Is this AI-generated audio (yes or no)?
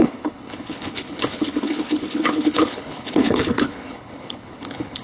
yes